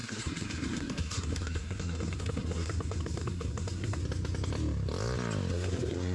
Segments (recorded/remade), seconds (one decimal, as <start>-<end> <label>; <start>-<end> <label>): 0.0-4.0 remade; 4.0-5.5 recorded; 5.5-6.1 remade